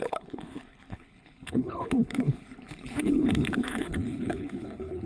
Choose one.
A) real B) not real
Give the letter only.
B